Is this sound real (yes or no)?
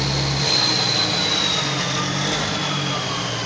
yes